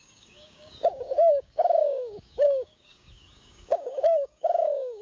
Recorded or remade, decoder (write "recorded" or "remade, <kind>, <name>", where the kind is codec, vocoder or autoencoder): remade, codec, DAC